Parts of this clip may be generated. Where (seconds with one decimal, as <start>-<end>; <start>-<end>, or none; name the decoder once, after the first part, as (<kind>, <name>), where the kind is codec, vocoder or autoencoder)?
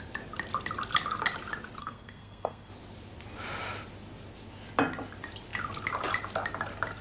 1.8-2.7 (codec, SNAC)